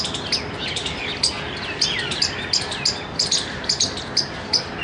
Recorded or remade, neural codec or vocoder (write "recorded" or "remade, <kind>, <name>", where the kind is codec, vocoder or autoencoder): recorded